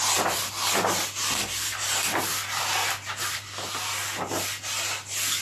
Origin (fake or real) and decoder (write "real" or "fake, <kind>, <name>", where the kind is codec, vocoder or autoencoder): real